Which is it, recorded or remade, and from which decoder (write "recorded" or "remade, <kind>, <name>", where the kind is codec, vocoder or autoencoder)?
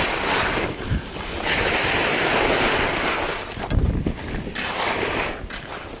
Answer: recorded